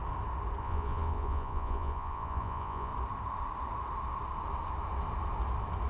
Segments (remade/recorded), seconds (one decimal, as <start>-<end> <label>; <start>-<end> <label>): 0.0-0.6 recorded; 0.6-2.9 remade; 2.9-5.9 recorded